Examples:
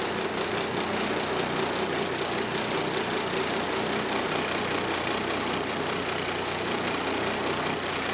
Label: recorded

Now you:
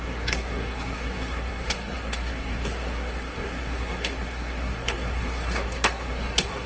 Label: remade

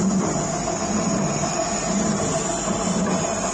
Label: recorded